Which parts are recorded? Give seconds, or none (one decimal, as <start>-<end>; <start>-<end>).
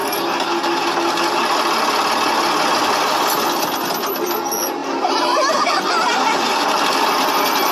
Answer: 0.0-7.7